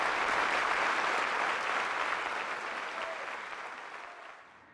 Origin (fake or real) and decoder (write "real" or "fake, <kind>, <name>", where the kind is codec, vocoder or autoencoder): real